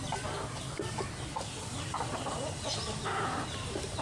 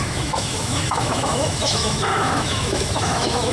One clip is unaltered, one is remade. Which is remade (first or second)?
second